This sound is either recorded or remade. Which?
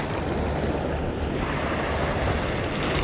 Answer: recorded